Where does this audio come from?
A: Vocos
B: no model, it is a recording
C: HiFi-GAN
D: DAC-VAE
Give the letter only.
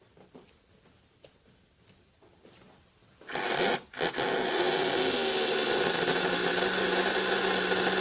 B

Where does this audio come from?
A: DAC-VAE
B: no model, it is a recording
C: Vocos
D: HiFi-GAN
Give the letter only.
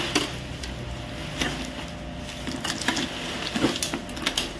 B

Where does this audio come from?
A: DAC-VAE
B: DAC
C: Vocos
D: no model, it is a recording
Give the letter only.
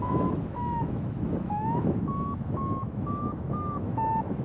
A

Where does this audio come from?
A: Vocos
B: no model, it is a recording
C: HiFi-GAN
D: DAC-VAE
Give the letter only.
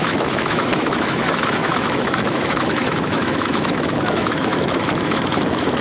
D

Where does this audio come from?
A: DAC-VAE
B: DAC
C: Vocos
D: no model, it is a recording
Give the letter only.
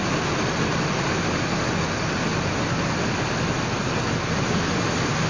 D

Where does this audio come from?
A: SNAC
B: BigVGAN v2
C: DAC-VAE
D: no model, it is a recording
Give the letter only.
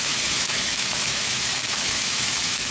C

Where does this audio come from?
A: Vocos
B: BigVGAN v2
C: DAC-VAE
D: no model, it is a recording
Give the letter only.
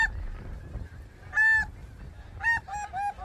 D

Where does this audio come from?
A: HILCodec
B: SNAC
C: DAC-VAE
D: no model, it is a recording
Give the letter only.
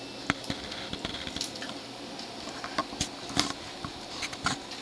D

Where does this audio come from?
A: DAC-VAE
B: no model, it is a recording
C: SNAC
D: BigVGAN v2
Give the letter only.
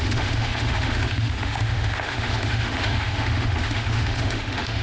A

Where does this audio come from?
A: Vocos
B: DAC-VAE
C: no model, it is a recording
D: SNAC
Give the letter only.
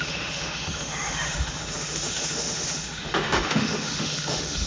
B